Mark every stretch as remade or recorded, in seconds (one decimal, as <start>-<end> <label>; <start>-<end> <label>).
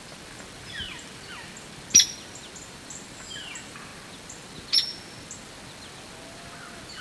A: 0.0-7.0 recorded